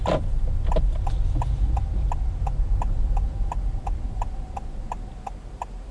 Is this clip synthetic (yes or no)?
no